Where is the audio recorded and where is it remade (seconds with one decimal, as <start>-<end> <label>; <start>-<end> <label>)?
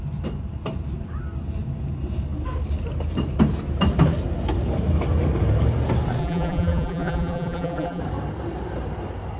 0.0-6.2 recorded; 6.2-8.0 remade; 8.0-9.4 recorded